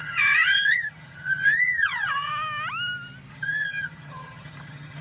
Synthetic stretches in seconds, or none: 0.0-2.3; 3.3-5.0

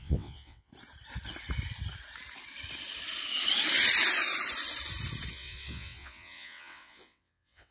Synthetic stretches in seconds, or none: 0.0-0.7; 5.3-7.7